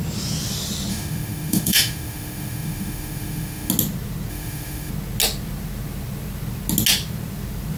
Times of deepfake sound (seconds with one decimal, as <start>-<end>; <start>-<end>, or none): 0.9-3.7; 4.3-4.9